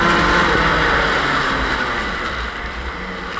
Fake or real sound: real